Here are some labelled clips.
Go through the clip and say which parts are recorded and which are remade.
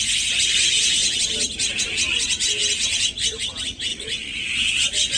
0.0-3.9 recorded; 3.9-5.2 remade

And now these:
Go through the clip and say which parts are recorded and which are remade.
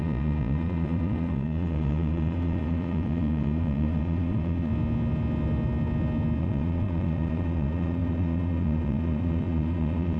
0.0-4.7 remade; 4.7-6.4 recorded; 6.4-10.2 remade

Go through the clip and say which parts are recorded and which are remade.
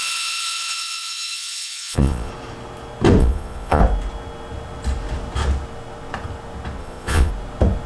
0.0-2.3 remade; 2.3-3.2 recorded; 3.2-3.8 remade; 3.8-6.8 recorded; 6.8-7.3 remade; 7.3-7.9 recorded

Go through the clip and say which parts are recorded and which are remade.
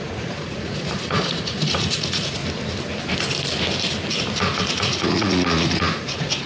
0.0-2.4 remade; 2.4-4.4 recorded; 4.4-6.5 remade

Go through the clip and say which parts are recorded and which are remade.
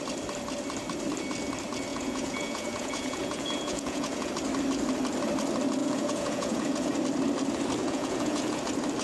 0.0-1.9 recorded; 1.9-4.3 remade; 4.3-5.8 recorded; 5.8-6.9 remade; 6.9-7.8 recorded; 7.8-8.6 remade; 8.6-9.0 recorded